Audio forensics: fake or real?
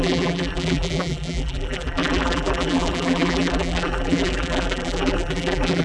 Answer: fake